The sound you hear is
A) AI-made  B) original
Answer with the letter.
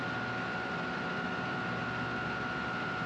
B